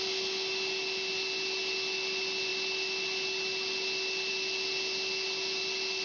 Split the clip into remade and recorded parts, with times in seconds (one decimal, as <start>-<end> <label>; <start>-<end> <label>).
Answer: 0.0-6.0 recorded